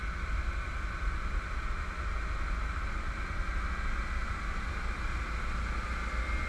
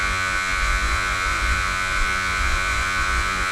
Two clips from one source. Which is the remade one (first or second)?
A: second